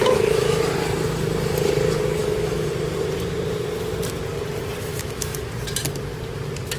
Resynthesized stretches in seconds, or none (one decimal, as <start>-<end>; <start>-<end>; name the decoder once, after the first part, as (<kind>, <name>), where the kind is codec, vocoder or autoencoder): 0.0-0.6 (autoencoder, DAC-VAE); 2.2-2.7; 4.9-5.5